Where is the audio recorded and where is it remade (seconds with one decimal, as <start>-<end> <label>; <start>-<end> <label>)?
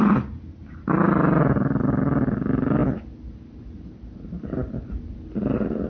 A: 0.0-5.9 recorded